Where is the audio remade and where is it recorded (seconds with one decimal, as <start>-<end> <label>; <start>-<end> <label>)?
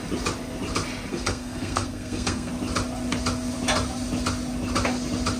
0.0-1.1 recorded; 1.1-2.5 remade; 2.5-5.4 recorded